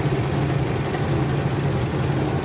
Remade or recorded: recorded